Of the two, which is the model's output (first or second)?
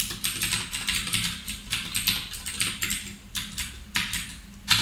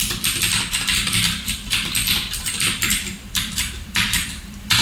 second